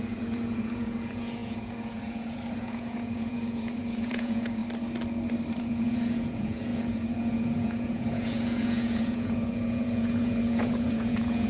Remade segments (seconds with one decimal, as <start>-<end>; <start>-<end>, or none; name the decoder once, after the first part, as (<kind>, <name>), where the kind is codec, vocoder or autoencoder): 0.0-4.6 (vocoder, Vocos); 5.6-11.5